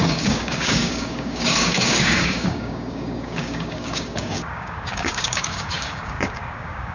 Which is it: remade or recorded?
remade